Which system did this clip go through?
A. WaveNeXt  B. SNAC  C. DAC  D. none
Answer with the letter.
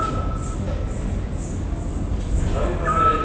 D